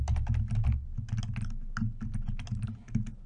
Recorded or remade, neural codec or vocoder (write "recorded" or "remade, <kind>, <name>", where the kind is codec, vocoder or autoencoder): recorded